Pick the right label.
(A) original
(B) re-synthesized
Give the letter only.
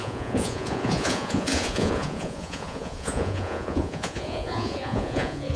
B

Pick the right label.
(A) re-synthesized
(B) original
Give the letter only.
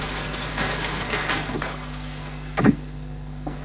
A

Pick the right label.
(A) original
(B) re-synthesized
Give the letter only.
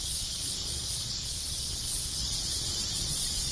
B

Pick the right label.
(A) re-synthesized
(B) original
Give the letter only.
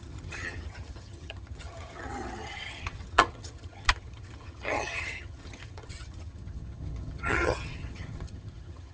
A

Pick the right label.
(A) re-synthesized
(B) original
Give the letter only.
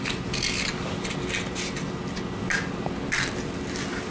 B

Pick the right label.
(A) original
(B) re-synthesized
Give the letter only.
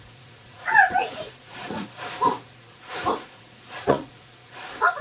B